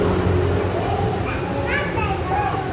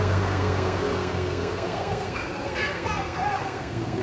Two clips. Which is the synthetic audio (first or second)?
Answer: second